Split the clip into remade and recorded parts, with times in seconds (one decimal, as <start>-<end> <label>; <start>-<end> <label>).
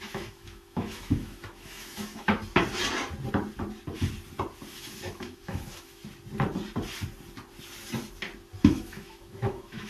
0.0-2.4 remade; 2.4-4.7 recorded; 4.7-6.0 remade; 6.0-8.6 recorded; 8.6-9.9 remade